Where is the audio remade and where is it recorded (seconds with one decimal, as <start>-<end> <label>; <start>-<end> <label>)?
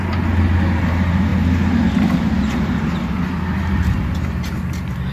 0.0-5.1 recorded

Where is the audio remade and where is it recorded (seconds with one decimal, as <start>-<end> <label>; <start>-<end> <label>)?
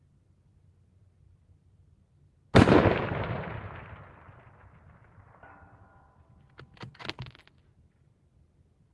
0.0-8.9 recorded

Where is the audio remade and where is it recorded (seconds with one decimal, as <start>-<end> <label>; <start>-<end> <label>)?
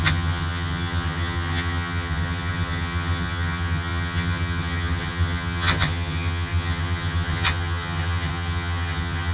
0.0-9.3 remade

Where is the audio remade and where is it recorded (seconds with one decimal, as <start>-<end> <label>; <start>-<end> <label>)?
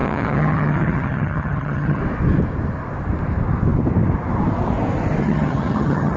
0.0-2.0 remade; 2.0-5.2 recorded; 5.2-6.2 remade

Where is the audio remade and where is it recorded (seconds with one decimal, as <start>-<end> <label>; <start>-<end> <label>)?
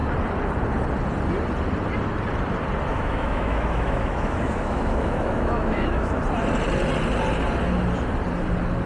0.0-2.9 recorded; 2.9-6.2 remade; 6.2-8.9 recorded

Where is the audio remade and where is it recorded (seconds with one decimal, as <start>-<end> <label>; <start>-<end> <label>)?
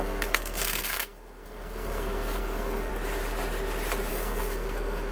0.0-2.9 remade; 2.9-4.1 recorded; 4.1-5.1 remade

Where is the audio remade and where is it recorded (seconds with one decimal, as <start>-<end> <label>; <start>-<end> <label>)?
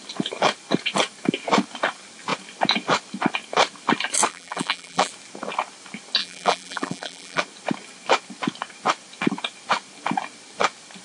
0.0-4.3 recorded; 4.3-5.1 remade; 5.1-6.2 recorded; 6.2-7.4 remade; 7.4-11.0 recorded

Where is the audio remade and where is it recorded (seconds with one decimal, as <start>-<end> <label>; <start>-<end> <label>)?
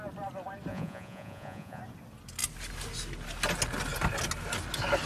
0.0-0.7 recorded; 0.7-1.8 remade; 1.8-5.1 recorded